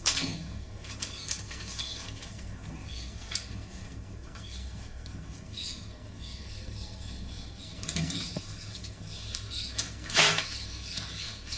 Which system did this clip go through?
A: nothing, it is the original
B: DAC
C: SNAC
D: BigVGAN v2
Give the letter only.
C